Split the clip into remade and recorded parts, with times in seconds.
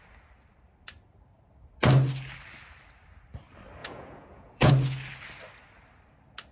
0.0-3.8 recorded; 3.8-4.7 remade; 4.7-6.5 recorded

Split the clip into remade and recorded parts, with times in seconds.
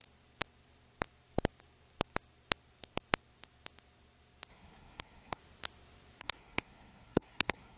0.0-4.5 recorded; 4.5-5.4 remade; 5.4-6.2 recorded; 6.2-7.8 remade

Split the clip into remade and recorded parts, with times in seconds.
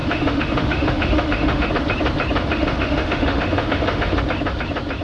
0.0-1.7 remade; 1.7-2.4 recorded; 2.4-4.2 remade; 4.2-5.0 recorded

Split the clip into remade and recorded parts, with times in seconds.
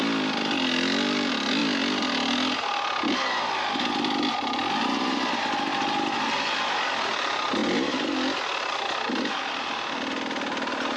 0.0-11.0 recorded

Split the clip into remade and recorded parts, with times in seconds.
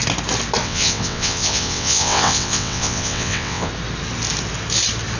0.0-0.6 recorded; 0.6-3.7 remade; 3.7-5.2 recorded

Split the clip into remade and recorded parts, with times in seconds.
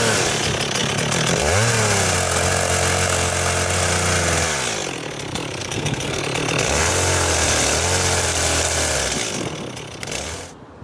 0.0-5.6 recorded; 5.6-6.2 remade; 6.2-10.8 recorded